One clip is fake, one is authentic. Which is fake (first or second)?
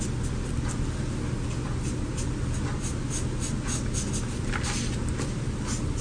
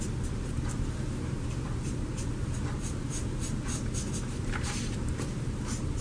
second